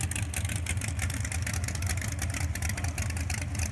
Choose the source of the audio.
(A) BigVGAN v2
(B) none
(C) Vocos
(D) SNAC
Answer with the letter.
B